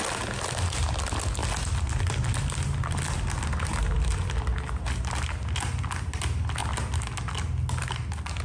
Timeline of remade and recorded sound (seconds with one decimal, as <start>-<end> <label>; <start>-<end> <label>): 0.0-8.4 recorded